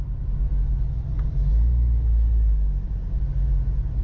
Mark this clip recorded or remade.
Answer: recorded